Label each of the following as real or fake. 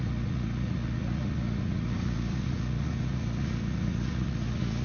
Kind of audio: fake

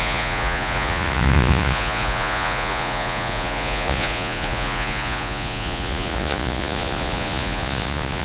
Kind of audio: fake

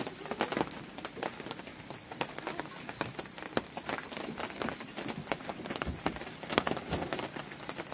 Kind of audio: real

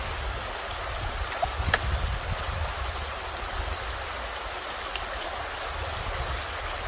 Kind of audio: real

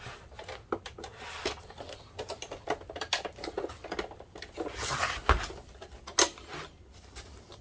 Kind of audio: real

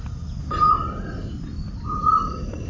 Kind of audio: real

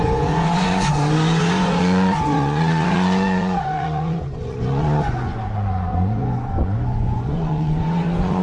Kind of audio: fake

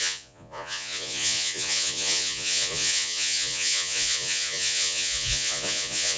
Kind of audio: fake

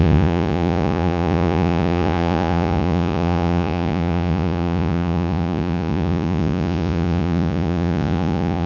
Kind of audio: fake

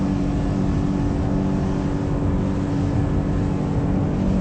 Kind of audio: real